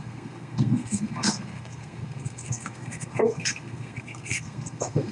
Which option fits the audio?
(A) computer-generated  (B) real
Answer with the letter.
A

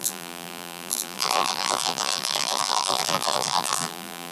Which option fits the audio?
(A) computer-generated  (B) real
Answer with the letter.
A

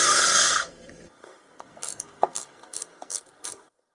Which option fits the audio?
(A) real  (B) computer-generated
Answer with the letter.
B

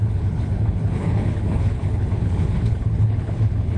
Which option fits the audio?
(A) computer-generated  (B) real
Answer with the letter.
A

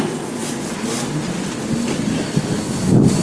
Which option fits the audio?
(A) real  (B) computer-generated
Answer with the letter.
A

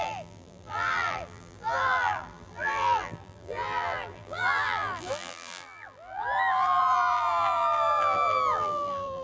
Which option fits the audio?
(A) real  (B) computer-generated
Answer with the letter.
B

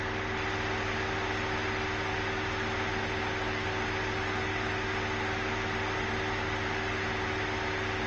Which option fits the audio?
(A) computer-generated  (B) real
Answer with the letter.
B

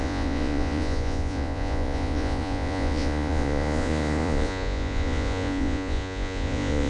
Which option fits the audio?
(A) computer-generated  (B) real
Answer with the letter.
A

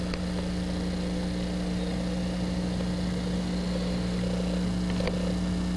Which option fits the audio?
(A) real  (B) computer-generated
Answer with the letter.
A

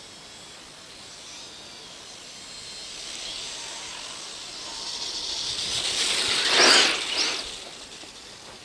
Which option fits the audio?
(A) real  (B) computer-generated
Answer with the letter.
A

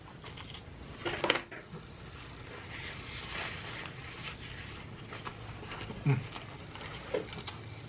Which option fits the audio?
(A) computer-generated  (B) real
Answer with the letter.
B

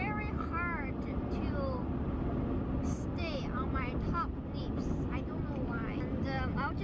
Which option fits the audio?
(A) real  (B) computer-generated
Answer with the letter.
A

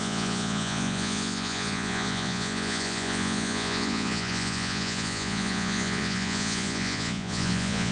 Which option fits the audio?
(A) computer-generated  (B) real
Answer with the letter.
A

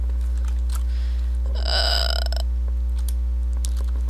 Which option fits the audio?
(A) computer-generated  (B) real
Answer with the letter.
B